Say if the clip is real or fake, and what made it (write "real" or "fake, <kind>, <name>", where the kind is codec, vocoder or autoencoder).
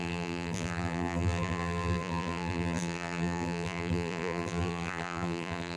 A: fake, vocoder, BigVGAN v2